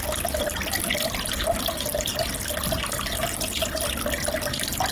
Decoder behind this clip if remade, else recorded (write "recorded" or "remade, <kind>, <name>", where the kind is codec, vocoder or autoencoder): recorded